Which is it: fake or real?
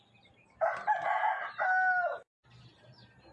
real